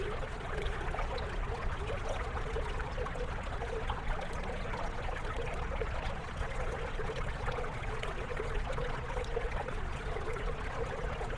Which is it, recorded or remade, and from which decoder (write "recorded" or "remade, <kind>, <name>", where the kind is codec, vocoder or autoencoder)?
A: remade, vocoder, Vocos